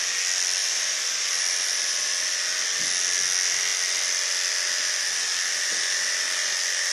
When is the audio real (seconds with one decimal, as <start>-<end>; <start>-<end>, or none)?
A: 0.0-0.6; 2.1-6.9